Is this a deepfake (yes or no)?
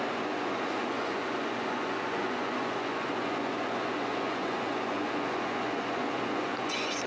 yes